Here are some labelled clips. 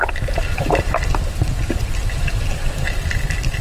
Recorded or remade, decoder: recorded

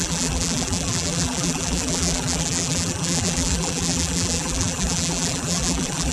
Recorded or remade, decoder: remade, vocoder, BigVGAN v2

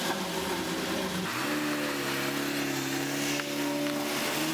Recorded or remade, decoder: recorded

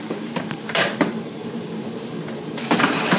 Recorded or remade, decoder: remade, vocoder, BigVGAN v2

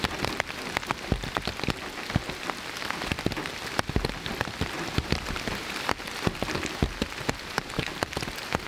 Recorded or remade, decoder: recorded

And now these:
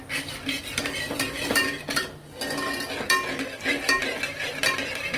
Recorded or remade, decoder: recorded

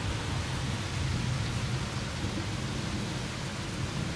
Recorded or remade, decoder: recorded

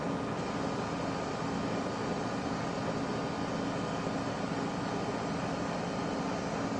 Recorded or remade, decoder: recorded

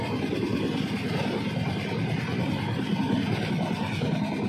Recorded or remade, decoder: recorded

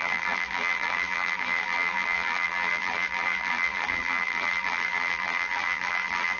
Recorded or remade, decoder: remade, vocoder, BigVGAN v2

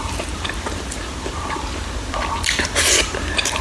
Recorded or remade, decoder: remade, vocoder, BigVGAN v2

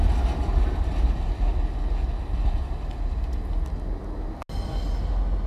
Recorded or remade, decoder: recorded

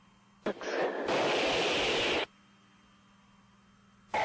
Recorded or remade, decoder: recorded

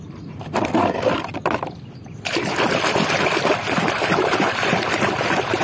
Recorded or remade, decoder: remade, vocoder, BigVGAN v2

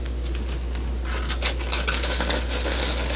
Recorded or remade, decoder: recorded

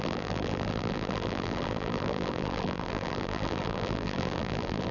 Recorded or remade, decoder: remade, vocoder, BigVGAN v2